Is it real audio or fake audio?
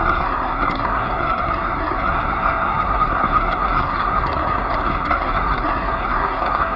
fake